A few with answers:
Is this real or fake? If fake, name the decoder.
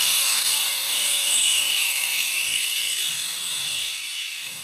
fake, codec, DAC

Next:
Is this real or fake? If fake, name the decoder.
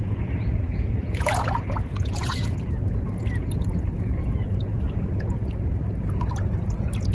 fake, vocoder, Vocos